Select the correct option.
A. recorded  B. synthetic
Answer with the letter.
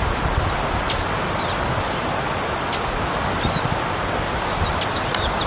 A